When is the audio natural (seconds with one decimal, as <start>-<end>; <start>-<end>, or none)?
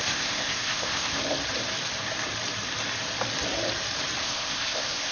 1.2-4.2